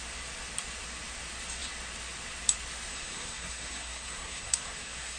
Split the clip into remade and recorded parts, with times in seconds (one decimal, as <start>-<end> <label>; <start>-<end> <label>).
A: 0.0-2.9 recorded; 2.9-5.2 remade